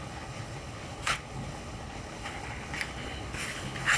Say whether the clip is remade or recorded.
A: remade